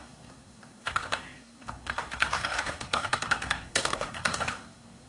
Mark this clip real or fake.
fake